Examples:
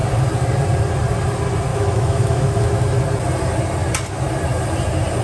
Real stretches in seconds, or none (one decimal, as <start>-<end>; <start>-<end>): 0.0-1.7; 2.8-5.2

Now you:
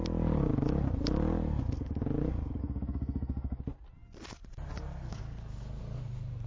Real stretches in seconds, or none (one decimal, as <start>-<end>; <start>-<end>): 0.0-2.6; 3.6-6.5

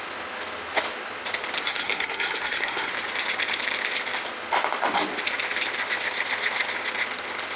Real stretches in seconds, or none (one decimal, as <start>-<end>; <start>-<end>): 0.0-1.6; 2.9-7.6